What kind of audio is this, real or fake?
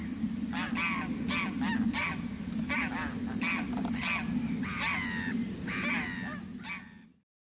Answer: real